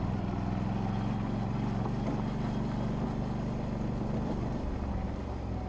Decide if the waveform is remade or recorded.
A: recorded